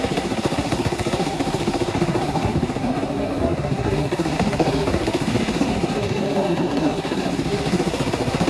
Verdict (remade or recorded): remade